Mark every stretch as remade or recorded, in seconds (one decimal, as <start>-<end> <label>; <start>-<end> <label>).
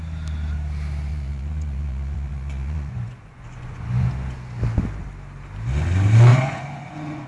0.0-1.1 recorded; 1.1-4.1 remade; 4.1-6.3 recorded; 6.3-7.3 remade